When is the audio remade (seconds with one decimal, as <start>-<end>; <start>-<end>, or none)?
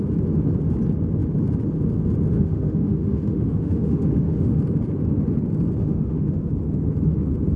2.3-4.6; 5.8-6.5